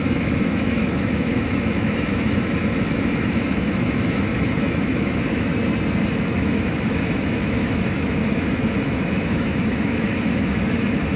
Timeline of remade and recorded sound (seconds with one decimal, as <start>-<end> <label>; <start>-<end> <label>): 0.0-5.5 remade; 5.5-6.0 recorded; 6.0-11.2 remade